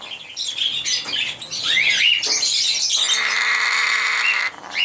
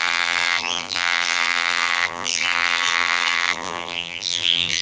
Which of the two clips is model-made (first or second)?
second